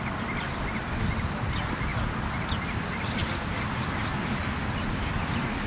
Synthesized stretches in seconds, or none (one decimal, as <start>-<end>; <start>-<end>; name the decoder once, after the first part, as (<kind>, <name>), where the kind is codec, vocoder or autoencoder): none